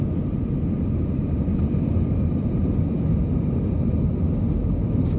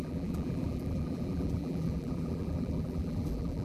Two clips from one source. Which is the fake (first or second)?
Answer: second